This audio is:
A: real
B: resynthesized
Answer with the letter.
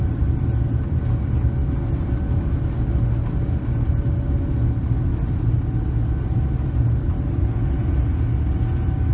A